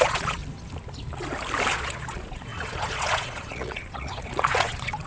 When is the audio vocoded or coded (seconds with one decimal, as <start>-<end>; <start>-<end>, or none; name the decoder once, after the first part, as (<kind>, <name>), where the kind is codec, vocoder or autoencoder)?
0.0-0.4 (vocoder, Vocos); 1.7-5.1